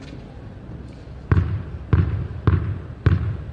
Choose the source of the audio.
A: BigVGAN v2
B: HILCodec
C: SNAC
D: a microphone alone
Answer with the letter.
D